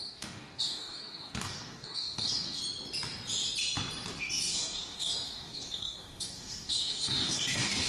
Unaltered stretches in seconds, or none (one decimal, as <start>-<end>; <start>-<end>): 2.6-4.2